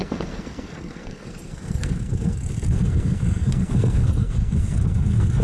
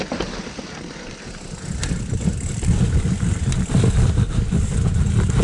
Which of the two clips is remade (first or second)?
first